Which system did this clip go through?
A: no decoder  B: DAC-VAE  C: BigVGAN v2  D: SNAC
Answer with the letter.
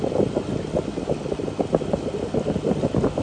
A